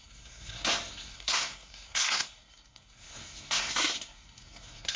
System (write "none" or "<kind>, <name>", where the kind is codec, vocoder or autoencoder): codec, SNAC